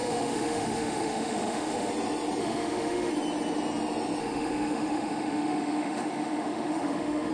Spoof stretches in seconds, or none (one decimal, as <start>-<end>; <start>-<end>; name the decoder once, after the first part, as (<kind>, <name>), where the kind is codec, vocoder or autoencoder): 0.0-1.9 (autoencoder, DAC-VAE); 2.4-3.1; 4.2-7.3